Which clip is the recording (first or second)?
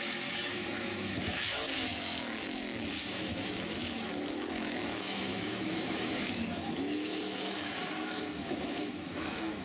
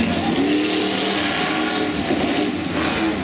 second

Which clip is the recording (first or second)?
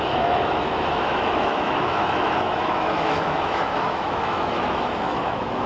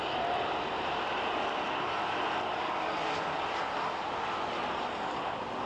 second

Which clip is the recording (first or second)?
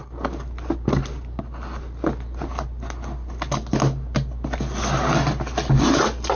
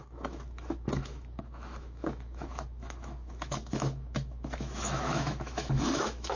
first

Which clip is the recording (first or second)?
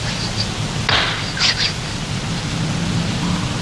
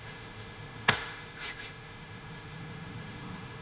first